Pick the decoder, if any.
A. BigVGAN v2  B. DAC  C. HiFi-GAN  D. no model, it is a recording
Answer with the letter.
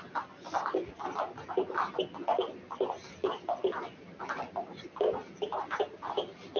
D